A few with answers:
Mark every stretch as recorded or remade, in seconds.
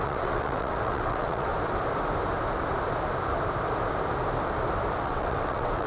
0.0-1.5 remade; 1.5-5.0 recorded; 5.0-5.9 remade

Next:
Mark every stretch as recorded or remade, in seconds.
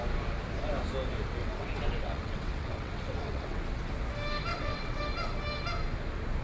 0.0-1.4 recorded; 1.4-3.6 remade; 3.6-4.5 recorded; 4.5-5.0 remade; 5.0-6.4 recorded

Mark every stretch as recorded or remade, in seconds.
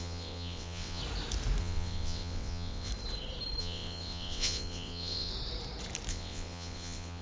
0.0-1.0 remade; 1.0-1.6 recorded; 1.6-2.9 remade; 2.9-3.6 recorded; 3.6-5.3 remade; 5.3-6.1 recorded; 6.1-7.2 remade